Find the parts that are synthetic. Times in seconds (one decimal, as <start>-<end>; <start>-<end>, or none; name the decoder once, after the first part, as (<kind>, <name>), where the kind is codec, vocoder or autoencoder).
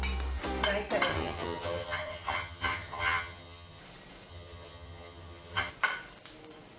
1.1-3.8 (vocoder, HiFi-GAN); 4.3-5.7